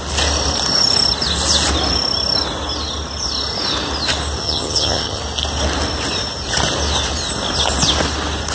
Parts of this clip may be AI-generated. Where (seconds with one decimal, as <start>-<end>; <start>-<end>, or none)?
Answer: 4.4-5.2